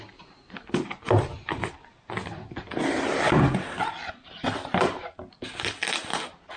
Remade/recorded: recorded